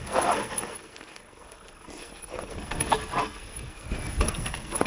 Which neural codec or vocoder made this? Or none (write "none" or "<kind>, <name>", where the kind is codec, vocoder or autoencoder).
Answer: codec, SNAC